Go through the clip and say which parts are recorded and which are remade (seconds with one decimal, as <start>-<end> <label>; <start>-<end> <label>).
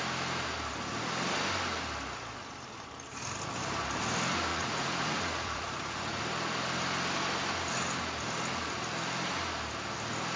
0.0-4.5 recorded; 4.5-6.2 remade; 6.2-10.4 recorded